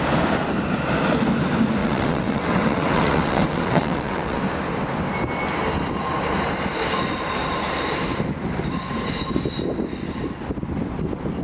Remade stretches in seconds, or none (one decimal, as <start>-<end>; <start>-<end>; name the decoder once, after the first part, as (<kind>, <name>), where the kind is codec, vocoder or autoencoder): 1.8-4.4 (vocoder, WaveNeXt)